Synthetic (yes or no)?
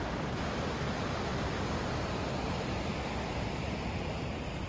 no